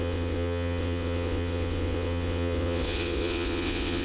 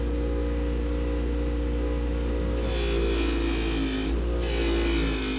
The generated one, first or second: first